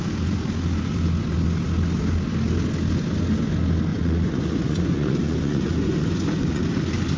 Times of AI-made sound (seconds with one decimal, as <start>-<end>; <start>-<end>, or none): 3.9-6.6